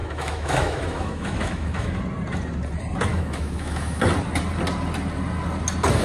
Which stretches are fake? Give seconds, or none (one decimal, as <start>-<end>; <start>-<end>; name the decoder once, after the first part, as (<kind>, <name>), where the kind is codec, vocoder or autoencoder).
0.0-2.0 (autoencoder, DAC-VAE); 3.1-4.0